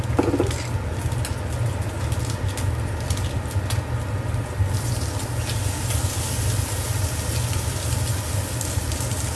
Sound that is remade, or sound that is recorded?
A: recorded